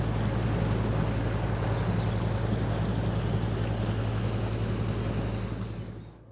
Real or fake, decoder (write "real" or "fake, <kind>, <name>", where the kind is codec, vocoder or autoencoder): real